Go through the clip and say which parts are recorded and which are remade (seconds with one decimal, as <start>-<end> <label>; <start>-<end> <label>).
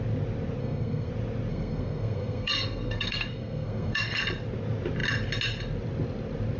0.0-0.6 recorded; 0.6-1.1 remade; 1.1-1.5 recorded; 1.5-4.2 remade; 4.2-6.6 recorded